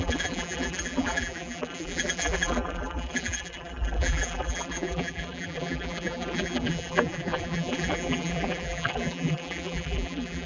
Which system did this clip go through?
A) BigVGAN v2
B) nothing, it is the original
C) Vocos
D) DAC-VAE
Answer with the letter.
A